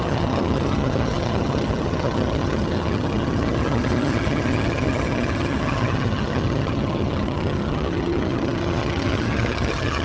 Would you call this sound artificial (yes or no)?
yes